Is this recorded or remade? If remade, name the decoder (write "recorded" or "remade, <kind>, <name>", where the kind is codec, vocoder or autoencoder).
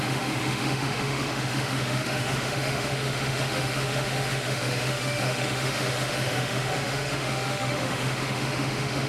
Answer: remade, autoencoder, DAC-VAE